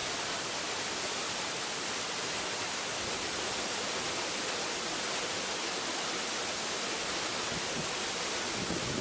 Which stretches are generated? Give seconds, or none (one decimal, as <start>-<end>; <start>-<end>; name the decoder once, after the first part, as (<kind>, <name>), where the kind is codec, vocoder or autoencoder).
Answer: none